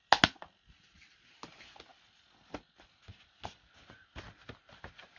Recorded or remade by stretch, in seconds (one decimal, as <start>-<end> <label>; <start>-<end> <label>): 0.0-5.2 recorded